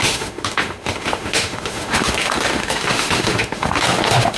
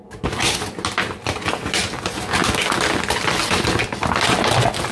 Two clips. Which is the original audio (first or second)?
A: second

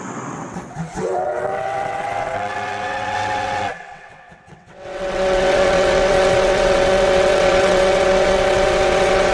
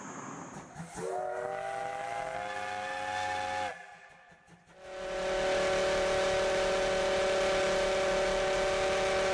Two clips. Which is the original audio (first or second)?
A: second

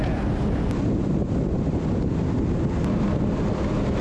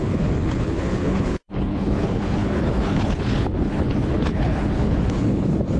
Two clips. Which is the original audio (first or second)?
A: first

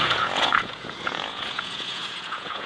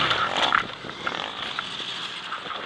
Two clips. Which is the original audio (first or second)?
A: second